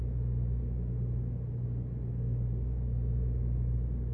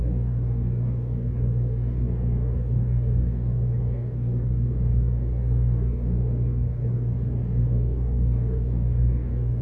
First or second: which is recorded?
first